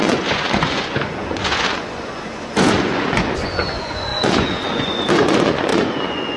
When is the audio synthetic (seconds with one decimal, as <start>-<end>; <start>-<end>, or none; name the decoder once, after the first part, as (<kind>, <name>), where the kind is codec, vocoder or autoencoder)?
0.0-6.4 (vocoder, Vocos)